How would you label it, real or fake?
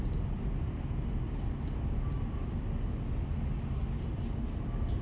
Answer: real